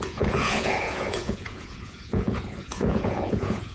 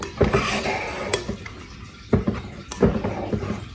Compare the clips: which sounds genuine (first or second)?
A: second